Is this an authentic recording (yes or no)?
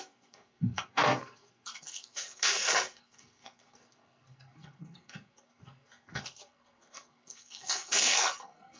no